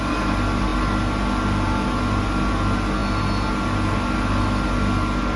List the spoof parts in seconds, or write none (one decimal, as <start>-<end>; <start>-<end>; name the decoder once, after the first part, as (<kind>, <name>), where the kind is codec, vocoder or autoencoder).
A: none